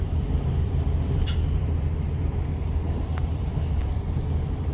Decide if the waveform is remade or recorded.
remade